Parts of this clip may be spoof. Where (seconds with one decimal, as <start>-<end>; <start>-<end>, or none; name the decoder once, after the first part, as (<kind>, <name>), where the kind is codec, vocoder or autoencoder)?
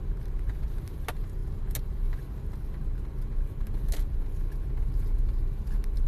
none